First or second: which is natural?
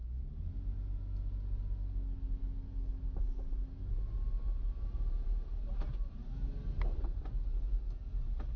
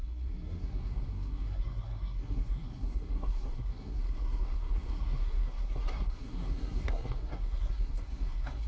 first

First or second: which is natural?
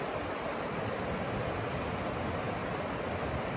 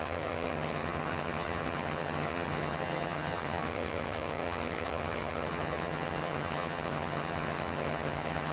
first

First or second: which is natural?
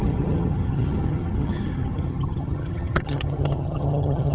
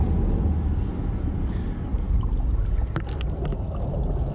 second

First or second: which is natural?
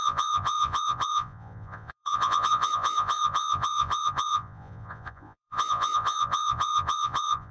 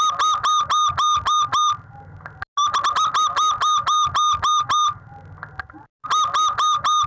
second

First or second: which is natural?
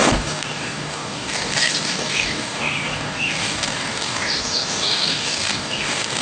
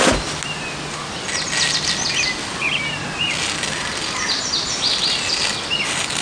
second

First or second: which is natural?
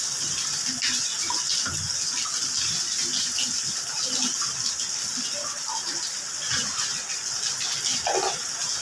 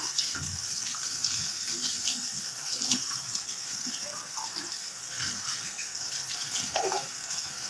first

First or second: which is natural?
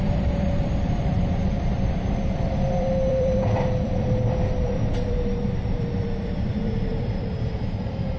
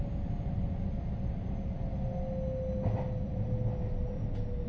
second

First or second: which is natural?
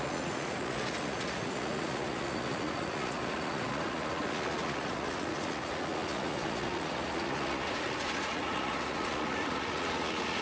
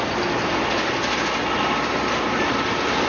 second